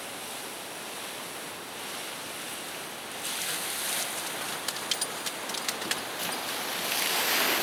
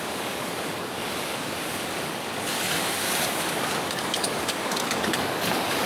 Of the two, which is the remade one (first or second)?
second